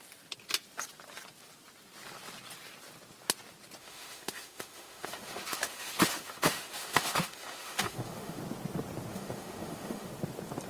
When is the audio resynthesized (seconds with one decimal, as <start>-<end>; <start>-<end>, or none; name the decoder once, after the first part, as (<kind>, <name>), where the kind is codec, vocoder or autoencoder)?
3.8-8.4 (autoencoder, DAC-VAE); 9.1-10.1